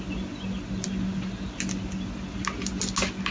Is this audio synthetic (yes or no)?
no